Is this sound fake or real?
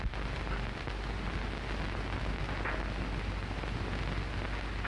real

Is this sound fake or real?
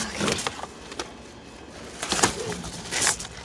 real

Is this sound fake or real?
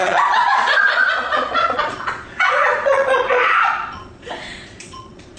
fake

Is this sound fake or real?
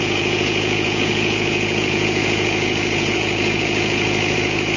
fake